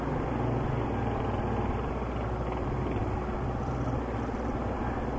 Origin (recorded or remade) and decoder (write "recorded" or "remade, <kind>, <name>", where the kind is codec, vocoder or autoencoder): remade, vocoder, BigVGAN v2